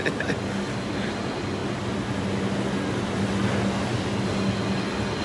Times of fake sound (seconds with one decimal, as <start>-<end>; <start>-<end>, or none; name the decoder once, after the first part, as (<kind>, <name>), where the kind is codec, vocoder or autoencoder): none